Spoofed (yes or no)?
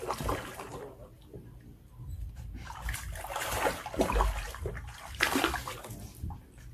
no